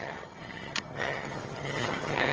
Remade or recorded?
remade